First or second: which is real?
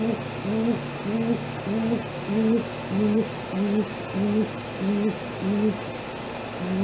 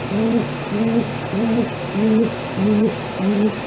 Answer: first